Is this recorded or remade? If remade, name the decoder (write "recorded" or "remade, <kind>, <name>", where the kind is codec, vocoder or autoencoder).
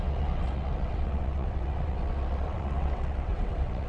remade, vocoder, WaveNeXt